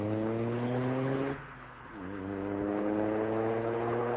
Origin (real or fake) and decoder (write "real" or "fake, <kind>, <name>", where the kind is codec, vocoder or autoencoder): fake, codec, HILCodec